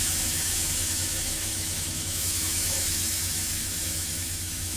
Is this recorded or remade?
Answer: remade